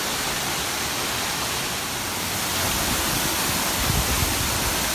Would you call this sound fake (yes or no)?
no